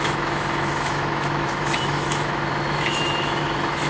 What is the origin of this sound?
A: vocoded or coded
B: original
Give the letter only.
A